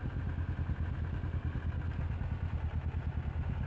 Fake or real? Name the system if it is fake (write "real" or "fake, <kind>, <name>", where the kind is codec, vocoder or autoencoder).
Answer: real